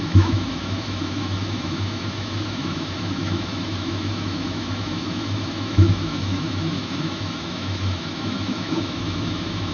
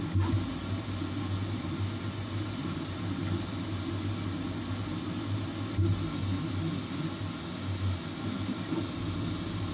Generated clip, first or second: first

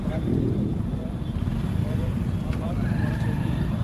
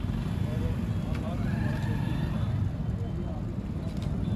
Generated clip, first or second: first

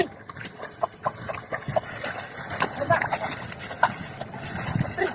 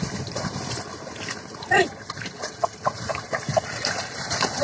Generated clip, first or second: second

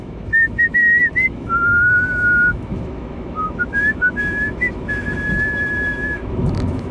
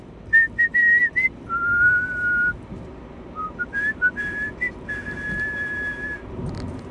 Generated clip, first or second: first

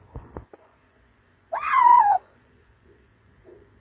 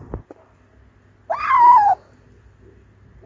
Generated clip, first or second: first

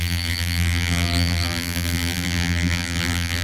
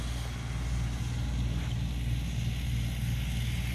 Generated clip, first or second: first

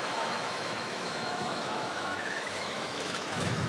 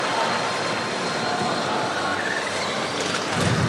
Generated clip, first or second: first